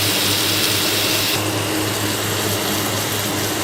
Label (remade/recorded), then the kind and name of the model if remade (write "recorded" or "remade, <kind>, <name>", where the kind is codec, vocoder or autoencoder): recorded